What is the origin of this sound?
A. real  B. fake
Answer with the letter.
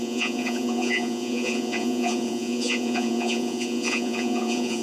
B